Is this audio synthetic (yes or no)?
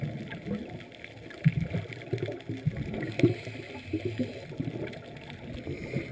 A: no